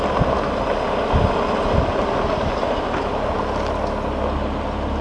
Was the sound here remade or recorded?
recorded